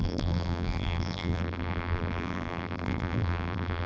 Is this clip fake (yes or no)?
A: yes